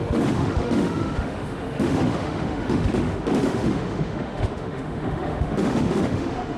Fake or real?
fake